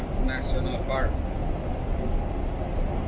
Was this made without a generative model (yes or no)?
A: yes